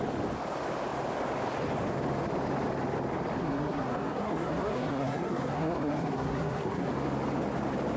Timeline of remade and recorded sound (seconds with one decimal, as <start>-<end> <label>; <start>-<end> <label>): 0.0-3.4 recorded; 3.4-6.9 remade; 6.9-8.0 recorded